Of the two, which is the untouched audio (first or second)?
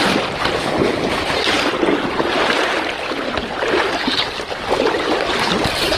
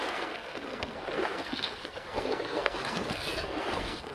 first